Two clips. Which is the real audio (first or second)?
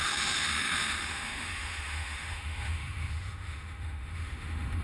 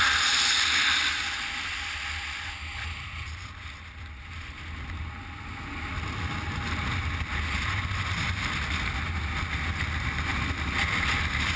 second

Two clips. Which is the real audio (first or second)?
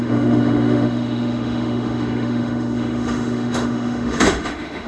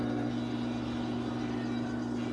second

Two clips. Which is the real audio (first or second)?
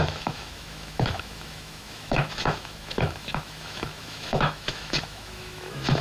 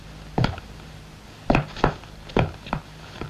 second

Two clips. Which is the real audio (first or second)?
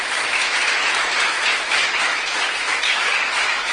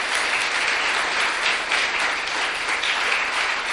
second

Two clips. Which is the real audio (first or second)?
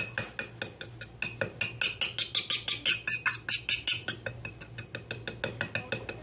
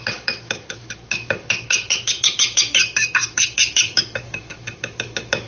first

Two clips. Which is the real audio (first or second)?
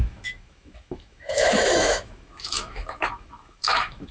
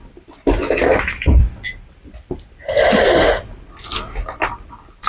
second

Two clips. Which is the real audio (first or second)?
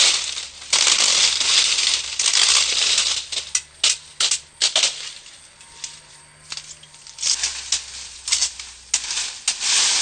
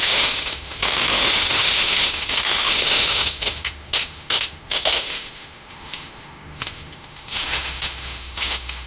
first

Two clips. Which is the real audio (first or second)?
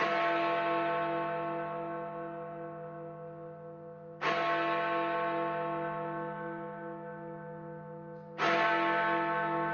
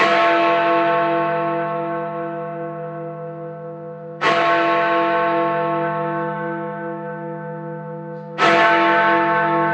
first